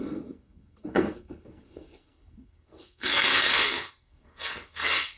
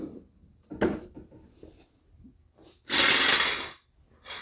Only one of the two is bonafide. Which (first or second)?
second